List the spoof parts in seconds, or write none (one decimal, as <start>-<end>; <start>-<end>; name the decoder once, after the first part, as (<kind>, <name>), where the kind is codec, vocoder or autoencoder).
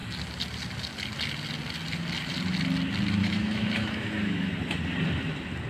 3.2-4.5 (autoencoder, DAC-VAE)